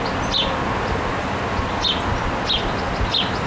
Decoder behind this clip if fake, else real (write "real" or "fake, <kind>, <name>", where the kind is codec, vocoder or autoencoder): real